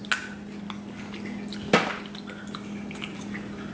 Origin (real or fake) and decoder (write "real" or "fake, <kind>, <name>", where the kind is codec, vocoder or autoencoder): real